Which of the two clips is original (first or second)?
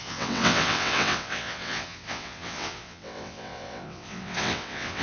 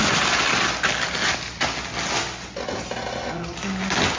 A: second